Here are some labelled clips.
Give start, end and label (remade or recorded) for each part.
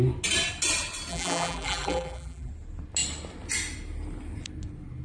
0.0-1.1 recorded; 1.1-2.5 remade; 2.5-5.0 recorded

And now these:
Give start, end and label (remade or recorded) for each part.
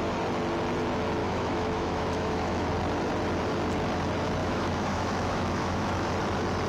0.0-1.2 recorded; 1.2-2.7 remade; 2.7-4.4 recorded; 4.4-6.1 remade; 6.1-6.7 recorded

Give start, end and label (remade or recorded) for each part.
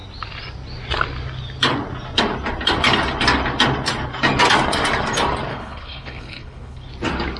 0.0-5.5 recorded; 5.5-6.9 remade; 6.9-7.4 recorded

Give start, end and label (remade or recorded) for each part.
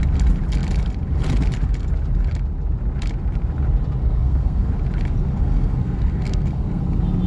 0.0-4.0 recorded; 4.0-4.7 remade; 4.7-5.3 recorded; 5.3-6.8 remade; 6.8-7.3 recorded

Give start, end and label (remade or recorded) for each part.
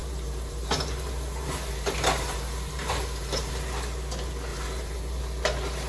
0.0-3.5 remade; 3.5-4.5 recorded; 4.5-5.2 remade; 5.2-5.9 recorded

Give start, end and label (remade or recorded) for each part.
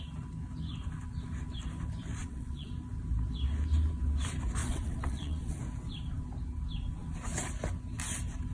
0.0-2.2 recorded; 2.2-2.7 remade; 2.7-4.6 recorded; 4.6-5.6 remade; 5.6-8.5 recorded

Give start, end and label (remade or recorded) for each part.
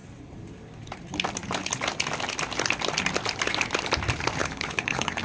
0.0-4.4 recorded; 4.4-5.2 remade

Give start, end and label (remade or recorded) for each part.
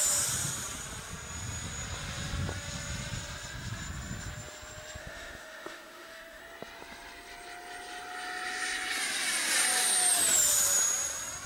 0.0-5.0 recorded; 5.0-6.4 remade; 6.4-11.5 recorded